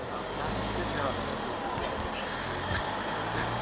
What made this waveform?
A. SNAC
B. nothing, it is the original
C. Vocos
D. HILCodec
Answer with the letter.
B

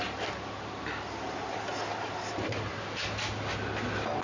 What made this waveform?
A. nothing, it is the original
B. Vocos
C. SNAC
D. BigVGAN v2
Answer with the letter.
A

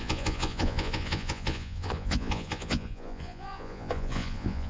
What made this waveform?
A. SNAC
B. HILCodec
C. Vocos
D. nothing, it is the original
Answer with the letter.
C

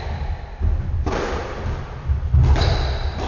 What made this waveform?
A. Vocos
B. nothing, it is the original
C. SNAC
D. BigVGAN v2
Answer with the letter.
B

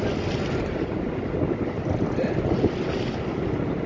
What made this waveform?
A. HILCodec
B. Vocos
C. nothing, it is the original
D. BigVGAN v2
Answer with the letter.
C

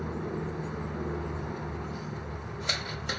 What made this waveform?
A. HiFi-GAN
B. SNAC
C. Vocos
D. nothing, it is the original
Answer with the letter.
D